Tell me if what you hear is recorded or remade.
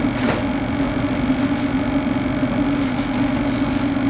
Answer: recorded